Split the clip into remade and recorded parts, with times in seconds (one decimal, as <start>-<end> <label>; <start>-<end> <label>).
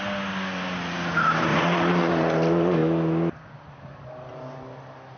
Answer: 0.0-1.5 recorded; 1.5-2.1 remade; 2.1-5.2 recorded